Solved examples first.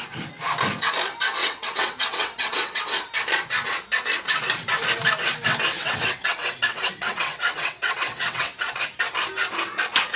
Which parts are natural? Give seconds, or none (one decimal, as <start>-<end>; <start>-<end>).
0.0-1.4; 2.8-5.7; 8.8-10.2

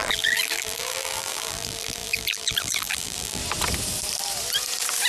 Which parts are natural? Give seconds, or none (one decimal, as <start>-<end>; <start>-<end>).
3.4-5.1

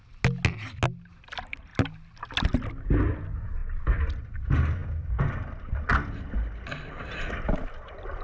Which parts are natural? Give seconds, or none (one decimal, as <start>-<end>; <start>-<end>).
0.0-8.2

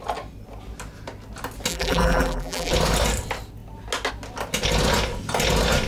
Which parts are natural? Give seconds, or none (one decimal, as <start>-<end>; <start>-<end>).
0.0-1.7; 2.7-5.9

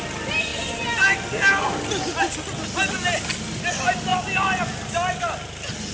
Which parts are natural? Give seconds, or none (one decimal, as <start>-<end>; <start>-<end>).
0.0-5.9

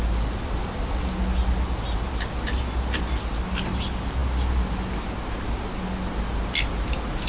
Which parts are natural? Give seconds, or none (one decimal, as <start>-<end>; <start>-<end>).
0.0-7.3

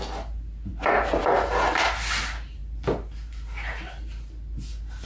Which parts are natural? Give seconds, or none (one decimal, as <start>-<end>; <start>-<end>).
0.0-5.1